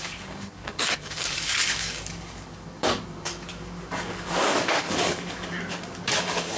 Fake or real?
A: fake